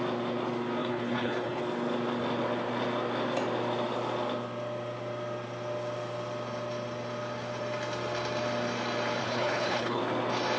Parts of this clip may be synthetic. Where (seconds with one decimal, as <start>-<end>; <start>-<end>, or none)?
0.8-1.6; 9.2-10.0